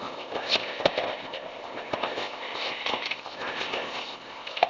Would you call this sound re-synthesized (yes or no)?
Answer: yes